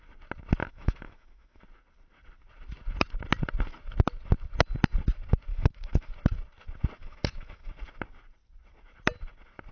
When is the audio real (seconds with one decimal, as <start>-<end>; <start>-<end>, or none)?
0.0-0.6; 1.6-5.5; 6.1-7.0; 7.7-9.7